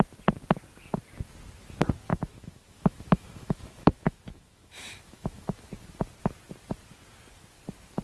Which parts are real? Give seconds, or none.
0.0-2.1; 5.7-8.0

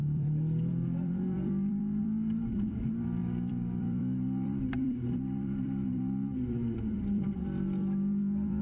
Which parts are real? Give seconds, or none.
none

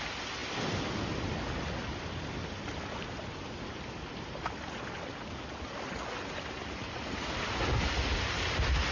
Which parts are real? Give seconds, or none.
0.0-0.4; 3.0-8.9

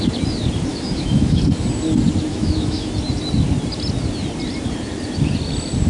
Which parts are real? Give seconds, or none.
0.0-0.7; 1.4-2.3; 2.9-5.9

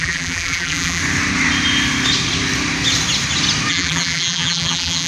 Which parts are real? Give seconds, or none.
1.0-3.7

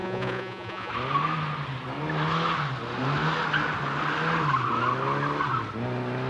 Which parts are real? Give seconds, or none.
0.9-6.3

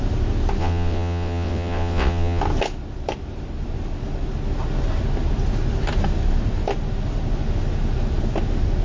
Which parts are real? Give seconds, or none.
0.0-0.6; 2.4-8.8